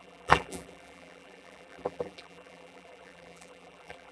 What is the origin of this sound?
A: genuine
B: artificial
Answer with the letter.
B